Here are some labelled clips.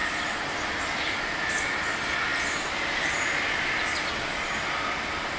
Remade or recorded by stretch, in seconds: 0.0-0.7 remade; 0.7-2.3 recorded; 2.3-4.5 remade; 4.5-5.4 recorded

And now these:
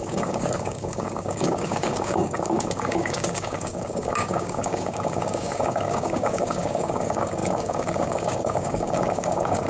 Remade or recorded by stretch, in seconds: 0.0-9.7 remade